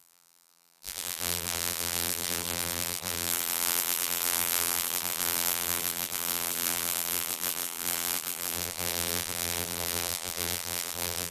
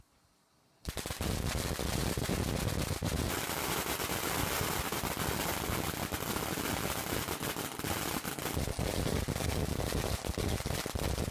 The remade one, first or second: first